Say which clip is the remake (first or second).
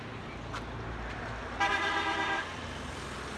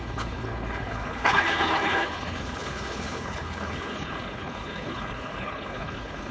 second